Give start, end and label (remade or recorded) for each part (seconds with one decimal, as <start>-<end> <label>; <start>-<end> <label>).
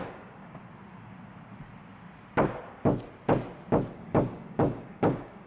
0.0-0.6 remade; 0.6-3.9 recorded; 3.9-5.5 remade